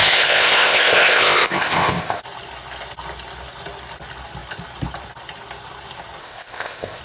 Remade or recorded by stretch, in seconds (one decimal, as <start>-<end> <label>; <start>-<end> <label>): 0.0-2.2 remade; 2.2-6.2 recorded; 6.2-7.0 remade